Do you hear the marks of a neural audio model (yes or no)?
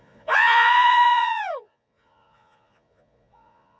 yes